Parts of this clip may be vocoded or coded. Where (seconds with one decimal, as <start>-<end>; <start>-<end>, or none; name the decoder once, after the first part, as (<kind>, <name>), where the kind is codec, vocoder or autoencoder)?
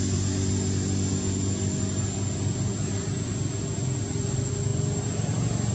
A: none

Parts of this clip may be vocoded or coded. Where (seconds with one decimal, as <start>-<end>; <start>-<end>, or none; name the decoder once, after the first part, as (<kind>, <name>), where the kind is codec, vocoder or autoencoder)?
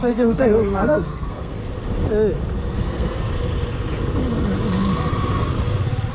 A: 0.0-1.6 (codec, SNAC); 2.7-3.3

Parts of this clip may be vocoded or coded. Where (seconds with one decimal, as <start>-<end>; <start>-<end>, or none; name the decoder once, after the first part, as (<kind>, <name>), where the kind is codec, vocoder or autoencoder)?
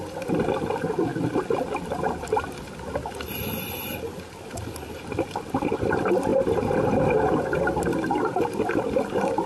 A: none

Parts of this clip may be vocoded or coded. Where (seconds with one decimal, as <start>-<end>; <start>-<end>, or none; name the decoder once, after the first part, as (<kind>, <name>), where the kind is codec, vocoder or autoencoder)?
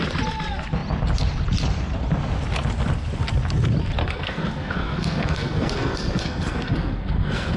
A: 4.0-7.6 (codec, SNAC)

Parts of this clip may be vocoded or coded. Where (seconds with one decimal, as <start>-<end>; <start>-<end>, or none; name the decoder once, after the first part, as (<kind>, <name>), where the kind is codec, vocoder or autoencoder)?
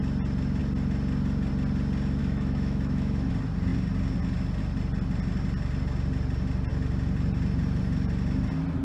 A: 2.2-3.3 (autoencoder, DAC-VAE)